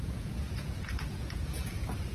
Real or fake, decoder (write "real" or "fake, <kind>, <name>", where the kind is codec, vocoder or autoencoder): fake, vocoder, Vocos